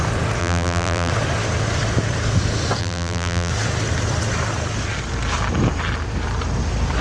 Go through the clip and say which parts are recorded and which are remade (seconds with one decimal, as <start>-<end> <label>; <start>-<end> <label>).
0.0-0.4 recorded; 0.4-1.1 remade; 1.1-2.8 recorded; 2.8-3.5 remade; 3.5-7.0 recorded